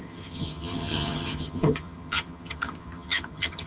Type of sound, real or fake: fake